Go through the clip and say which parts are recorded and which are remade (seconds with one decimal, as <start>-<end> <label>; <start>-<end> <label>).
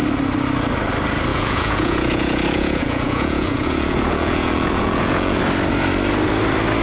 0.0-1.3 recorded; 1.3-5.4 remade; 5.4-6.8 recorded